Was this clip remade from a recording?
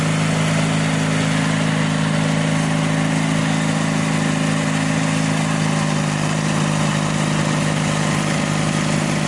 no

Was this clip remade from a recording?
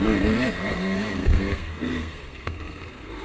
yes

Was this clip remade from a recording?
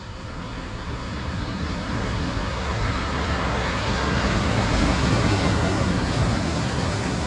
yes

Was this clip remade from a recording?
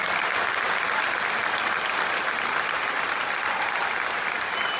no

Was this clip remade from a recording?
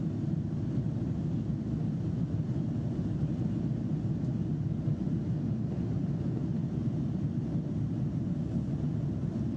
no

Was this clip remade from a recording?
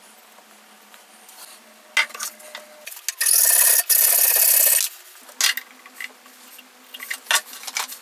no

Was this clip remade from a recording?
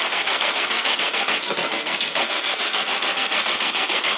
yes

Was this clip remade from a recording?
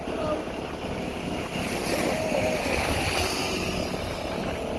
no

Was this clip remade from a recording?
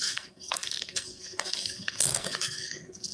yes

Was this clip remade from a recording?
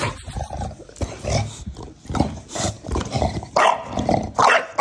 no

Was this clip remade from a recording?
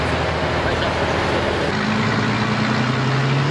no